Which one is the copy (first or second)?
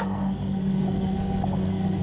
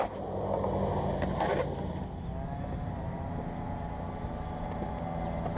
first